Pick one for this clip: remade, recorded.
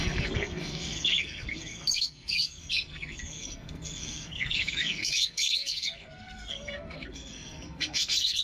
remade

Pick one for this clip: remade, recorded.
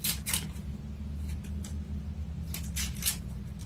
recorded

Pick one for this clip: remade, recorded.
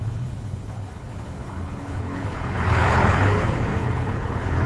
remade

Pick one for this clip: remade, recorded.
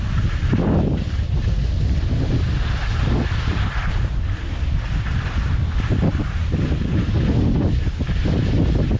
recorded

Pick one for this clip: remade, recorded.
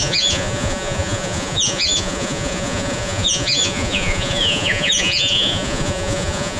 remade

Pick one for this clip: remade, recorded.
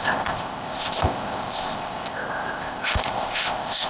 remade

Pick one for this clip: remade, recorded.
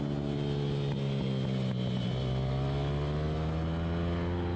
recorded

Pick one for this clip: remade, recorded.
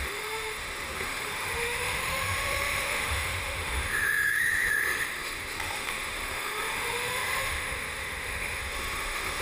remade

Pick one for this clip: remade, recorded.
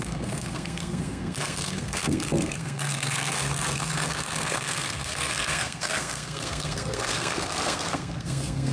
remade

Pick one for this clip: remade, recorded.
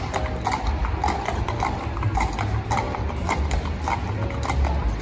recorded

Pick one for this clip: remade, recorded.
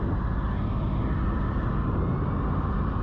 recorded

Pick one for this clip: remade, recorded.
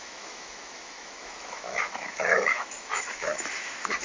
remade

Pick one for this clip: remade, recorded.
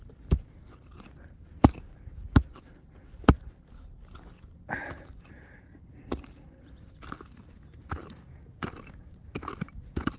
recorded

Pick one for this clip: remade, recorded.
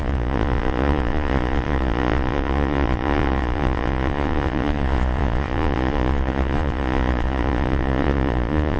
remade